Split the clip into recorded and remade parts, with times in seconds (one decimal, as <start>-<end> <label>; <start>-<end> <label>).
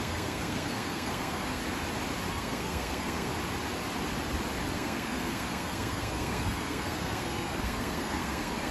0.0-1.6 remade; 1.6-2.3 recorded; 2.3-3.3 remade; 3.3-4.7 recorded; 4.7-8.7 remade